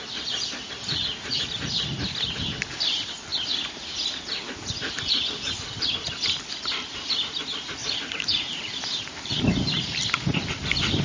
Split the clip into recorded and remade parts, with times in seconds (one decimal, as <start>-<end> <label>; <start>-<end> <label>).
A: 0.0-11.0 recorded

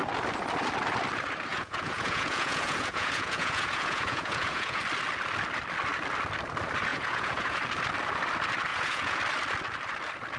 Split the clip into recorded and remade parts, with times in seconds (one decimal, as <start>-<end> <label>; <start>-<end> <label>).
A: 0.0-1.5 recorded; 1.5-4.8 remade; 4.8-6.9 recorded; 6.9-7.6 remade; 7.6-8.7 recorded; 8.7-9.2 remade; 9.2-10.4 recorded